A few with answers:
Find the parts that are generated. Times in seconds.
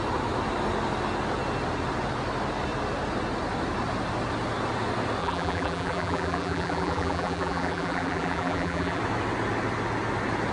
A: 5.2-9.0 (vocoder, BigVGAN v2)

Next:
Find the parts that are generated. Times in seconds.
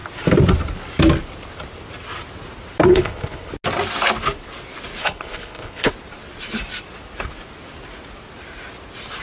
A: 2.9-3.5 (codec, HILCodec); 5.0-5.9